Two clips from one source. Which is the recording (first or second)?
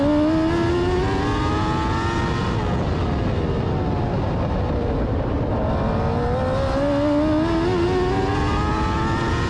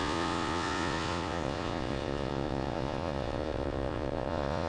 first